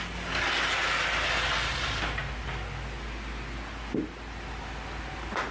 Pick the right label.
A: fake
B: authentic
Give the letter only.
B